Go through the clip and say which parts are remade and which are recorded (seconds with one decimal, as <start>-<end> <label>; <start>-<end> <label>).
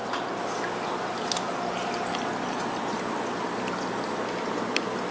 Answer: 0.0-5.1 recorded